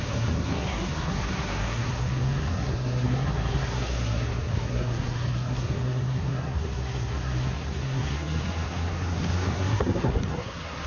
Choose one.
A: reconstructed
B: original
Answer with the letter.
A